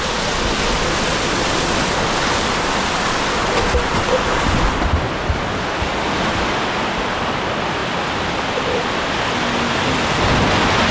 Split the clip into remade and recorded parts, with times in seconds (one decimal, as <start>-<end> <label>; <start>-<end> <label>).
0.0-10.9 recorded